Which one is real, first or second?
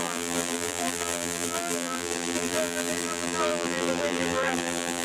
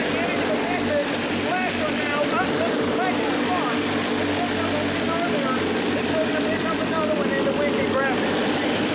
second